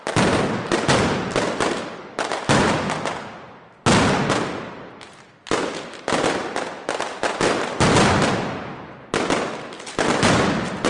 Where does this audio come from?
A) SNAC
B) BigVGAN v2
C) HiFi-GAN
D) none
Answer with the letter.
D